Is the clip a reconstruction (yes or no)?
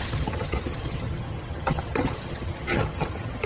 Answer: yes